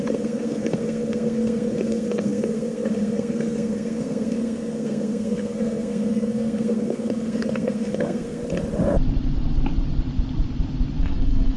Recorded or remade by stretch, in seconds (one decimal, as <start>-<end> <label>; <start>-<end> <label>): 0.0-8.4 remade; 8.4-11.0 recorded; 11.0-11.6 remade